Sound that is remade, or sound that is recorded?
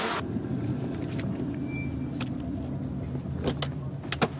recorded